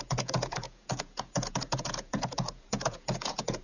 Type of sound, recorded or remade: remade